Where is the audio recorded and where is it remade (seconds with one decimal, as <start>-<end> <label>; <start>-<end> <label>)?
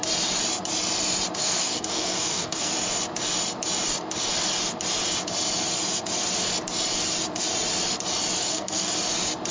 0.0-1.4 recorded; 1.4-2.7 remade; 2.7-8.4 recorded; 8.4-8.9 remade; 8.9-9.5 recorded